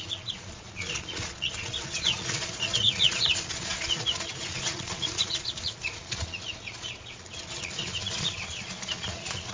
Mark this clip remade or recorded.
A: remade